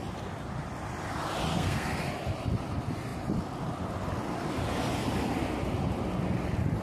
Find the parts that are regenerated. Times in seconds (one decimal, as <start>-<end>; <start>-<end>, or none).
1.5-2.1